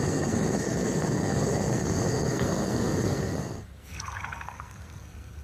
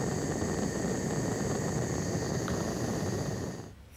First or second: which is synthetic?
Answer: first